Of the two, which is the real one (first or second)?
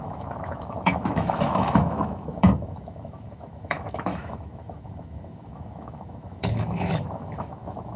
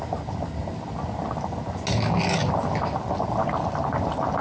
second